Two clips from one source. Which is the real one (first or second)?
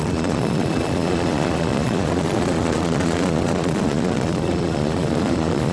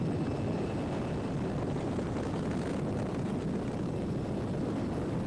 second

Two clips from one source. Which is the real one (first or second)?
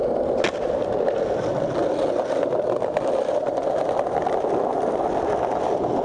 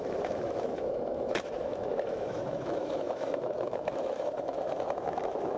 first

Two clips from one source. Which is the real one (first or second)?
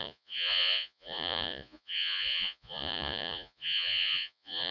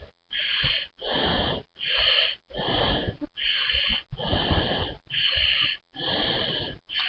second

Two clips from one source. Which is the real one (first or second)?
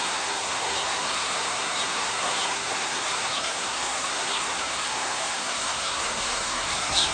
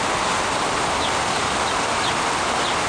second